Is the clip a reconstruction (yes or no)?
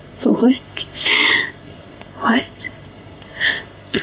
yes